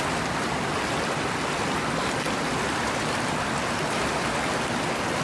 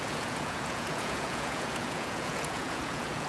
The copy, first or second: second